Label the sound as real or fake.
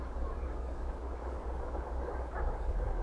fake